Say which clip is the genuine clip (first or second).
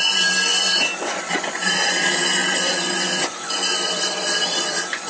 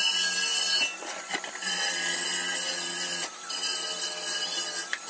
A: second